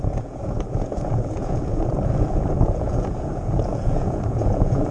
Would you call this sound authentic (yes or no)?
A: no